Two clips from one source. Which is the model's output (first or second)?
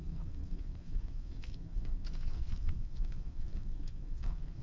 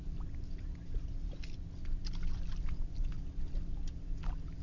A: first